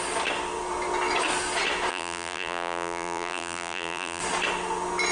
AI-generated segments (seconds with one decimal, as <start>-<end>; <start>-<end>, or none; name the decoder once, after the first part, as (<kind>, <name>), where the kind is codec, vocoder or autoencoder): 1.9-4.2 (vocoder, BigVGAN v2)